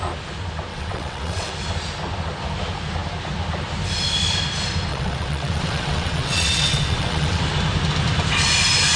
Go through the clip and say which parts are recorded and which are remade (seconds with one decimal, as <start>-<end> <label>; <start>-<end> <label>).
0.0-0.7 recorded; 0.7-1.5 remade; 1.5-4.9 recorded; 4.9-7.4 remade; 7.4-9.0 recorded